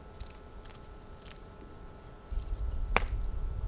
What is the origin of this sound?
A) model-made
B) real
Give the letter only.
B